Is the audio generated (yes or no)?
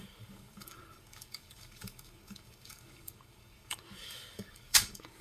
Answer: yes